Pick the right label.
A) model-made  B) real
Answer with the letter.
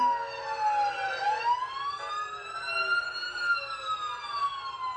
B